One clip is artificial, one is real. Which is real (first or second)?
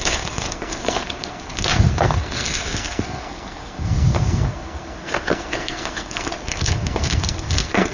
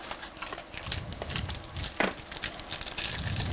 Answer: second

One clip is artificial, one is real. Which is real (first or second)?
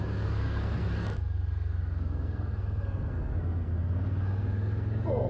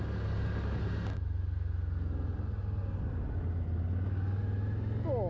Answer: second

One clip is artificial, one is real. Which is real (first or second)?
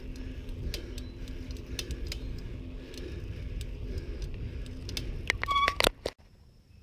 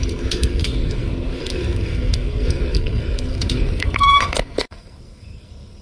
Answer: first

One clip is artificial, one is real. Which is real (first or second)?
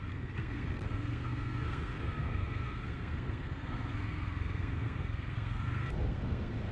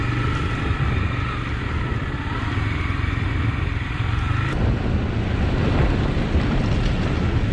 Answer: second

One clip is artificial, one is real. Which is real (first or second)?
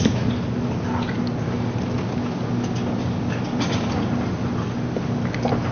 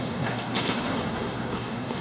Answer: first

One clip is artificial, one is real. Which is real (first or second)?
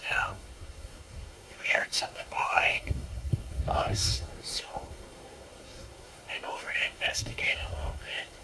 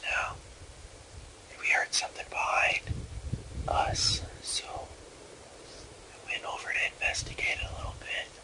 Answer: second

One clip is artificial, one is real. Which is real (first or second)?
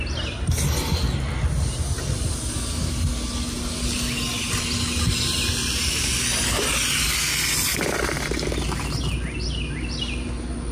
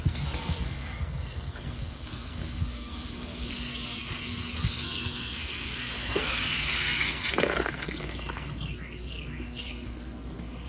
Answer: first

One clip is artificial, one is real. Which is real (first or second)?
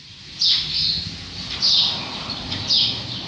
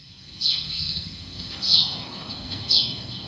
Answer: first